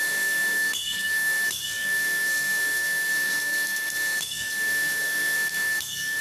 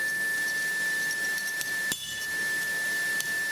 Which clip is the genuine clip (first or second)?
second